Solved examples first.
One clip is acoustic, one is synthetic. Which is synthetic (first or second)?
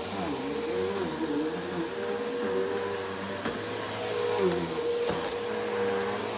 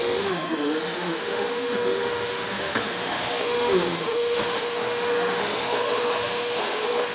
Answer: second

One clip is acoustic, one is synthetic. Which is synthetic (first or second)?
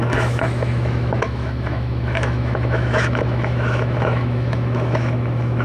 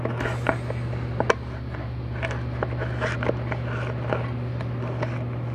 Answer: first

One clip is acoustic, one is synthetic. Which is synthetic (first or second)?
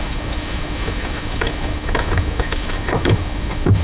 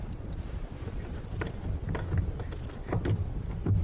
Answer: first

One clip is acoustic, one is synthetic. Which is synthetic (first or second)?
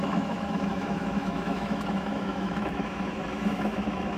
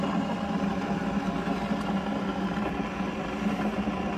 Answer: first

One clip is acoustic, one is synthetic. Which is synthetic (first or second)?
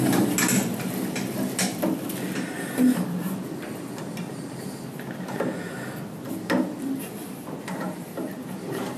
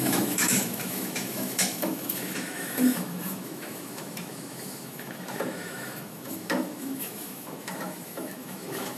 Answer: second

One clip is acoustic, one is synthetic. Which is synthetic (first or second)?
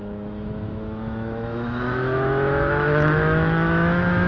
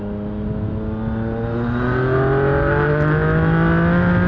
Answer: first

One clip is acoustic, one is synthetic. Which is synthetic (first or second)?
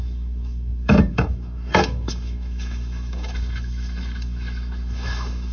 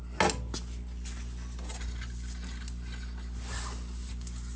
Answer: first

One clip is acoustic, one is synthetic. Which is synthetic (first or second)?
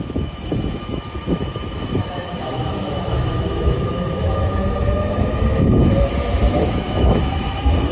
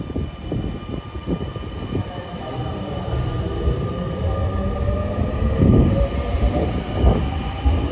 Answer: first